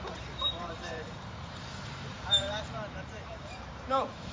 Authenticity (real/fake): fake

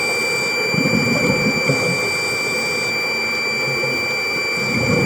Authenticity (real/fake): real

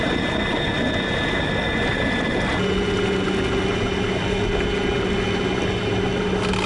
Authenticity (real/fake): real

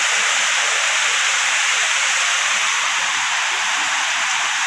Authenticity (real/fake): fake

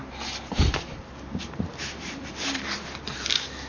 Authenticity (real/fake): fake